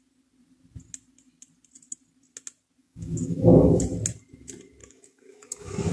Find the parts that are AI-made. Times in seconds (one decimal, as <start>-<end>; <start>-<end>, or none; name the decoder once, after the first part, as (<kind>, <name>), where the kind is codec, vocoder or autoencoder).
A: 2.8-3.8 (codec, DAC); 4.8-5.9